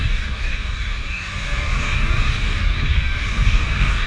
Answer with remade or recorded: remade